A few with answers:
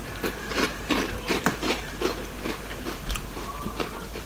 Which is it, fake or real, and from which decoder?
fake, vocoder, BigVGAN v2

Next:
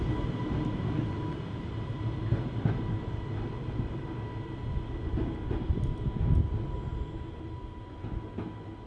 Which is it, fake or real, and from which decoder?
real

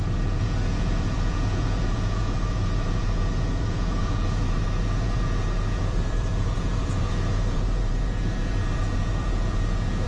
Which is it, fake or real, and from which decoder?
fake, vocoder, Vocos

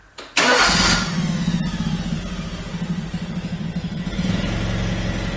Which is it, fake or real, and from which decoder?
real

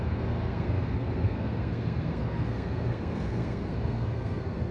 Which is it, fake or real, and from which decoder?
fake, codec, SNAC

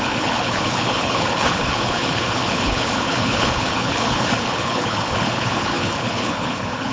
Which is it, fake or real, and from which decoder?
fake, codec, HILCodec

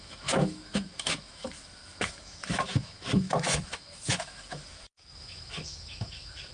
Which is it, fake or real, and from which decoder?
fake, autoencoder, DAC-VAE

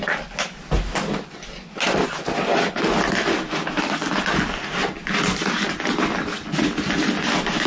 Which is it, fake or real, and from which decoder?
real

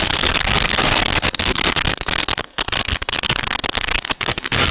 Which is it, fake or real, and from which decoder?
fake, codec, SNAC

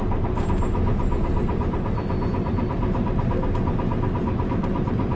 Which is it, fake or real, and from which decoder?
real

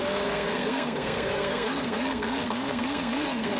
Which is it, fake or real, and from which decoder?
fake, codec, SNAC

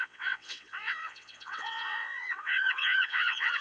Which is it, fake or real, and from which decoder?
fake, vocoder, WaveNeXt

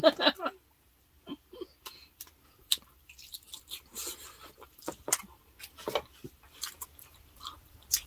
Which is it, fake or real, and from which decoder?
real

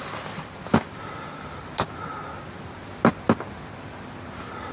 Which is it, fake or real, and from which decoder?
real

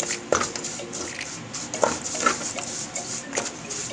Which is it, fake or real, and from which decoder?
real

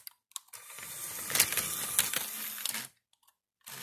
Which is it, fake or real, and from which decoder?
real